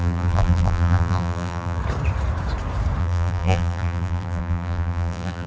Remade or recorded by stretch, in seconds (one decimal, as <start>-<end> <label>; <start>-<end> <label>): 0.0-1.8 remade; 1.8-3.0 recorded; 3.0-5.5 remade